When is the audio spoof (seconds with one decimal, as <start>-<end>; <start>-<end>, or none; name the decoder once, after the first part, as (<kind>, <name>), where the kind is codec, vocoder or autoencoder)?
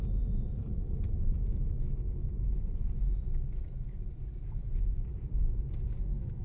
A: none